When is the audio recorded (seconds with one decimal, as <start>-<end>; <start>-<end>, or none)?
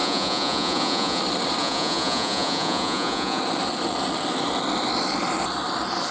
1.2-1.6; 3.4-6.1